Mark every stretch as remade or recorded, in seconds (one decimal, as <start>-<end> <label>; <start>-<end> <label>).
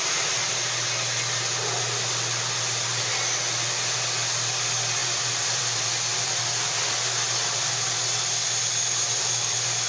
0.0-5.0 recorded; 5.0-6.3 remade; 6.3-9.9 recorded